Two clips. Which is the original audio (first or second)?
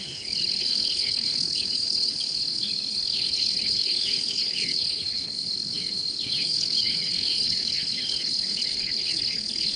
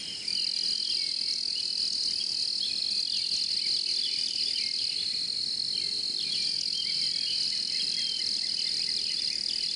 second